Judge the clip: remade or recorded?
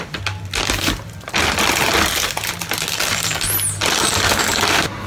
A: recorded